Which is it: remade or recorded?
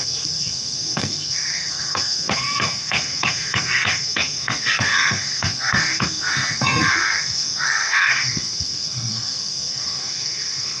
remade